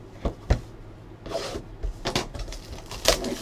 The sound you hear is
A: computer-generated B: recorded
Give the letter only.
B